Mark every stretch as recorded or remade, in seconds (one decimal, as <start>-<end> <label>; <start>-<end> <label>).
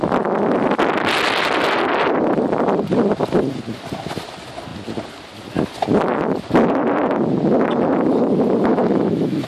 0.0-8.7 recorded; 8.7-9.5 remade